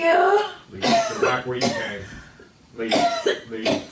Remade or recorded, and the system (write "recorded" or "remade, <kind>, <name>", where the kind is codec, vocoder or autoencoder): remade, vocoder, BigVGAN v2